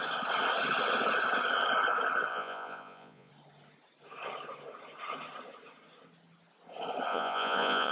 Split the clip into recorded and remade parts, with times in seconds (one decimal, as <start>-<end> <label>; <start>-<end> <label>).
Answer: 0.0-2.3 recorded; 2.3-3.3 remade; 3.3-7.1 recorded; 7.1-7.9 remade